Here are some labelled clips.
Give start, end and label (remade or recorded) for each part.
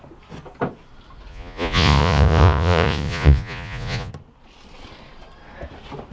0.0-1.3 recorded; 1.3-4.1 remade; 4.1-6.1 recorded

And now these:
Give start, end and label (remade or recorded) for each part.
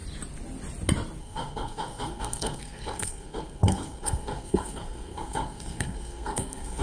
0.0-1.2 recorded; 1.2-6.8 remade